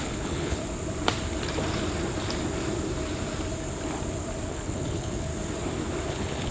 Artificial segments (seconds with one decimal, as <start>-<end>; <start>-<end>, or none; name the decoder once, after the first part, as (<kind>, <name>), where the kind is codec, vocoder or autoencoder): 0.0-0.6 (codec, HILCodec); 4.5-5.3; 6.1-6.5